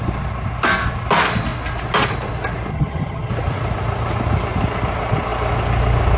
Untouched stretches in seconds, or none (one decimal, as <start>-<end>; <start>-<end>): 0.0-2.7; 3.3-6.2